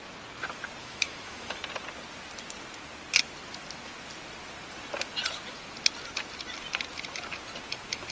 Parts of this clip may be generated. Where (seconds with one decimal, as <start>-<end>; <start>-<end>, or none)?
0.8-1.6